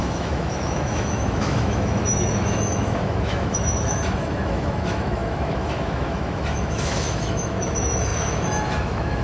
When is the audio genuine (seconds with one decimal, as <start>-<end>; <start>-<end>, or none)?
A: none